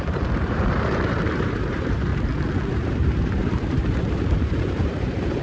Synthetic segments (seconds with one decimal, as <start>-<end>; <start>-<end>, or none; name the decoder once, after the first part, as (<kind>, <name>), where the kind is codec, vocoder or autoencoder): 0.0-2.1 (vocoder, BigVGAN v2); 2.7-5.4